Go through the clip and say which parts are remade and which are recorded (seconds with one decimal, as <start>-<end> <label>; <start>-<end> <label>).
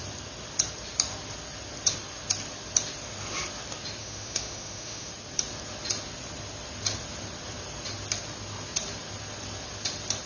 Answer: 0.0-4.0 recorded; 4.0-5.1 remade; 5.1-10.3 recorded